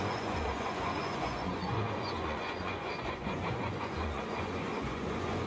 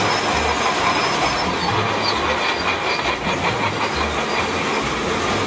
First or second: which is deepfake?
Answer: first